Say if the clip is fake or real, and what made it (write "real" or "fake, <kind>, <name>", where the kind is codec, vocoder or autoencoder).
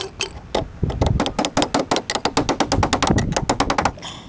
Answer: real